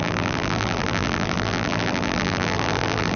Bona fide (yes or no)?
no